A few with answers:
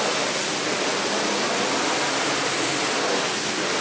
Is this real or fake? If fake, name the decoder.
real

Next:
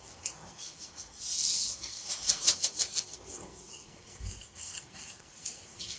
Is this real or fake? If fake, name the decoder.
fake, codec, SNAC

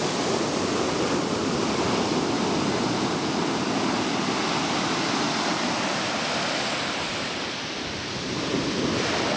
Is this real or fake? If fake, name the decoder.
real